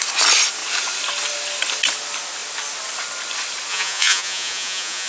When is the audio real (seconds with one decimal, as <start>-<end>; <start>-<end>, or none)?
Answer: 0.0-3.7